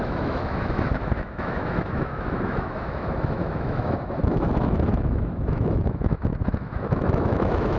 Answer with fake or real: fake